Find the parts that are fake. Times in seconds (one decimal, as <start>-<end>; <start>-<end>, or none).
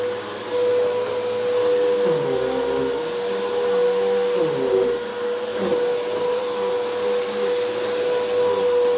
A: none